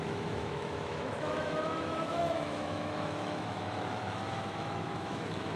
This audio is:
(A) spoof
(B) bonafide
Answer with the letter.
A